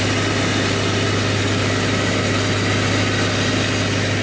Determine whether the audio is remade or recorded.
recorded